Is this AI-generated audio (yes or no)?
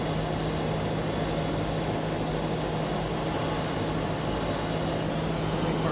no